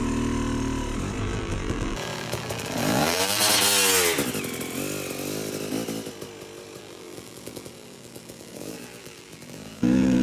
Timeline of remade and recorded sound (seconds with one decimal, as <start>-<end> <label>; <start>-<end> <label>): 0.0-1.2 recorded; 1.2-3.4 remade; 3.4-6.8 recorded; 6.8-10.2 remade